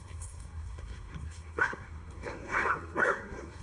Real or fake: fake